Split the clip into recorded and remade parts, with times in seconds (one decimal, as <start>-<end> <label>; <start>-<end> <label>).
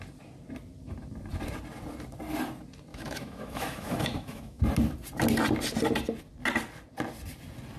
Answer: 0.0-2.9 recorded; 2.9-4.6 remade; 4.6-7.8 recorded